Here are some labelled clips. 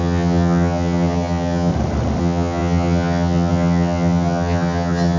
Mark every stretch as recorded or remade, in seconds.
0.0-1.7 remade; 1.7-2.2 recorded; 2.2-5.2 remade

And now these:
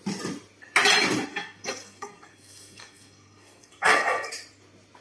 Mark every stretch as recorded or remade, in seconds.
0.0-1.3 recorded; 1.3-4.3 remade; 4.3-5.0 recorded

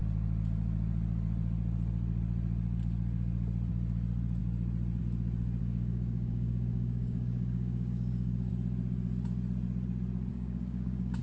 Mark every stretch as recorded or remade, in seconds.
0.0-5.6 recorded; 5.6-8.5 remade; 8.5-10.3 recorded; 10.3-11.2 remade

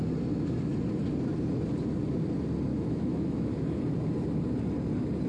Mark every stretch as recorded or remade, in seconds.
0.0-2.7 recorded; 2.7-3.8 remade; 3.8-5.3 recorded

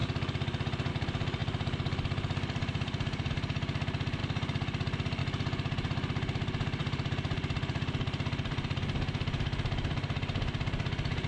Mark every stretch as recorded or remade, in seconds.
0.0-1.4 recorded; 1.4-3.3 remade; 3.3-4.2 recorded; 4.2-5.2 remade; 5.2-6.8 recorded; 6.8-8.8 remade; 8.8-11.3 recorded